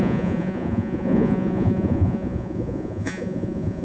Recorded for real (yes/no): no